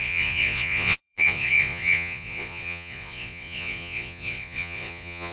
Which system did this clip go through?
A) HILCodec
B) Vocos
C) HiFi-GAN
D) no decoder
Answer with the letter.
B